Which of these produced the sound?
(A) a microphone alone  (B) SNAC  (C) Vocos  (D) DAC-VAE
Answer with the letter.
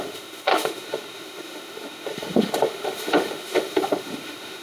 D